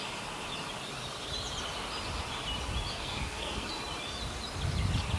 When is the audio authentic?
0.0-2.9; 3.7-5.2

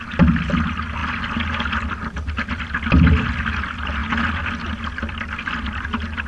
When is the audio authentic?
0.0-6.3

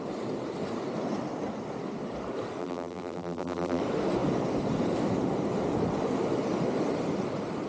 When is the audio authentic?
0.0-2.6; 3.8-7.7